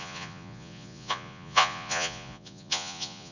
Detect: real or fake fake